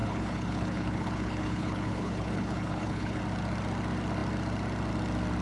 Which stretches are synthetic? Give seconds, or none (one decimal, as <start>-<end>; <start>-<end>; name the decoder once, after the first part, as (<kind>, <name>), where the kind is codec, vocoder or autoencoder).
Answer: 0.0-3.2 (codec, HILCodec)